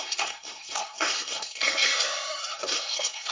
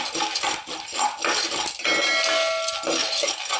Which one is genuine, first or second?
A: second